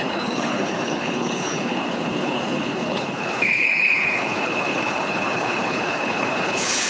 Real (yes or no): no